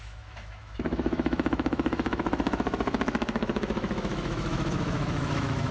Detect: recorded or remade remade